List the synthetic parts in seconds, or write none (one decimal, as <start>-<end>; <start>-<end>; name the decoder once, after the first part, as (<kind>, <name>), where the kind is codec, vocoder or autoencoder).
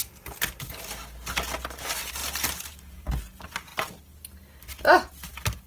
2.2-3.1 (vocoder, BigVGAN v2)